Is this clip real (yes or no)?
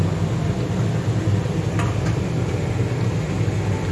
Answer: yes